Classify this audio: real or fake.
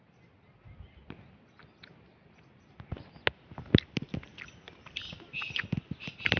real